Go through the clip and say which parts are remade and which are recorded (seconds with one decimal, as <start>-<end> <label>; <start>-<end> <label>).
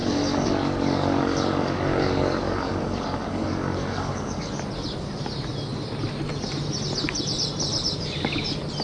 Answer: 0.0-4.5 remade; 4.5-8.8 recorded